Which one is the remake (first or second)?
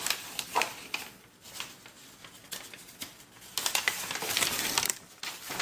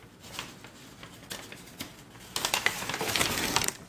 first